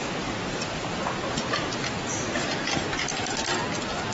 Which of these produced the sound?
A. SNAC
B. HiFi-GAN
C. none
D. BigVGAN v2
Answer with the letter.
C